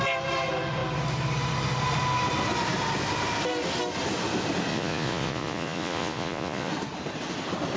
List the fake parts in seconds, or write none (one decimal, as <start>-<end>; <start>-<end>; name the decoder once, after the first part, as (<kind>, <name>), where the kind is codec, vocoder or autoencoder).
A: 4.7-6.7 (vocoder, Vocos)